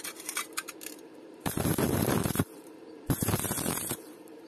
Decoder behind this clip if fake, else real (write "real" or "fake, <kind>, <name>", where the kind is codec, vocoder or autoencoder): fake, vocoder, BigVGAN v2